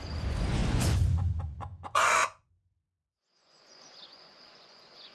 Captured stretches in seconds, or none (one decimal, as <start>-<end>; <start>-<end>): none